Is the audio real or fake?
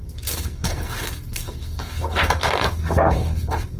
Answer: fake